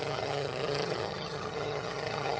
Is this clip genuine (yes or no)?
no